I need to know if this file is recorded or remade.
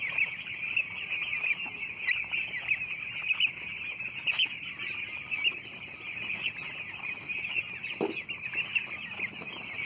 recorded